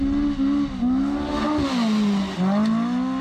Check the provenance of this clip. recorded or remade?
recorded